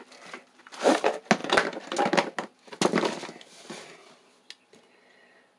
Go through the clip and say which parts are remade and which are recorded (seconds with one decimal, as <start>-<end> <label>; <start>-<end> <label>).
0.0-5.6 recorded